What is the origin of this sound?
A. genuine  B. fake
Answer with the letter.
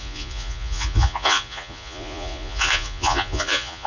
B